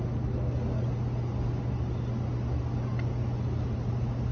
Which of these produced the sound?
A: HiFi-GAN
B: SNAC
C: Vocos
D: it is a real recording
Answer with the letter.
D